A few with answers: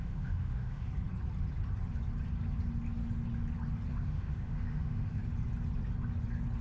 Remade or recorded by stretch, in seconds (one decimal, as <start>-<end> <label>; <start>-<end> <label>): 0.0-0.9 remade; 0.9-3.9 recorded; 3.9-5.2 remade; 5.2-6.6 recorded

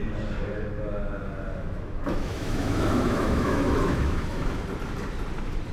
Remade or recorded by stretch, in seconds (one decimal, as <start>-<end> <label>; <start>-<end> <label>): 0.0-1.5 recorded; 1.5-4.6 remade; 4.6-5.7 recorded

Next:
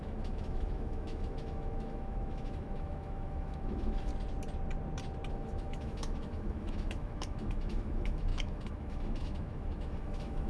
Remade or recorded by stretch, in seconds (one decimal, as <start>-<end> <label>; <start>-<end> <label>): 0.0-4.1 remade; 4.1-5.3 recorded; 5.3-10.5 remade